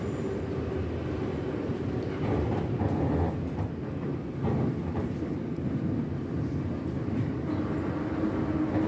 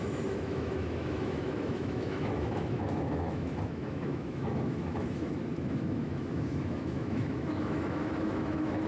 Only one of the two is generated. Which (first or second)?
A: second